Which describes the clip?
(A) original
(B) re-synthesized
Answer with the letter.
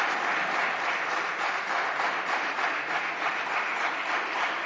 B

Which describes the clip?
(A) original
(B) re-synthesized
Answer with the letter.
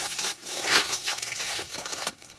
B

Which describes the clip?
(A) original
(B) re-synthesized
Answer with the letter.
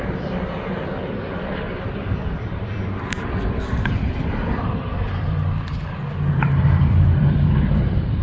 B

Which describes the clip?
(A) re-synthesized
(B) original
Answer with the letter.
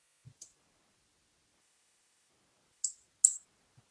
B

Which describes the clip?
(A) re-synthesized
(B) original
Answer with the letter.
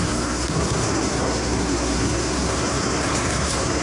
A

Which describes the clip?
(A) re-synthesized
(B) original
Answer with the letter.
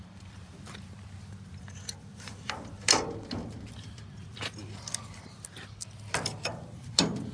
A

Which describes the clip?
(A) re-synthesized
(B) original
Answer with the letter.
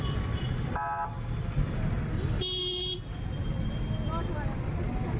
B